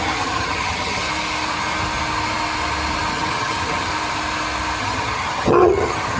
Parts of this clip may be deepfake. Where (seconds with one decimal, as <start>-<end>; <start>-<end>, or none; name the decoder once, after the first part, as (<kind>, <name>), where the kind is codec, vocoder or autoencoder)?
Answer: 0.0-1.0 (vocoder, HiFi-GAN); 3.1-3.9; 4.8-6.2